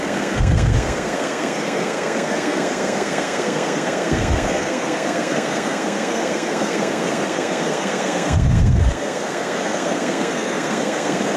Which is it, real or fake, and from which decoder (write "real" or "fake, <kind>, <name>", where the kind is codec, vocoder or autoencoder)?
fake, codec, SNAC